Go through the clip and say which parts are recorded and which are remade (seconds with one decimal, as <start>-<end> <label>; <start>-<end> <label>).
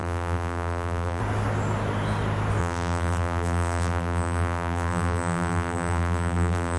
0.0-1.2 remade; 1.2-2.6 recorded; 2.6-6.8 remade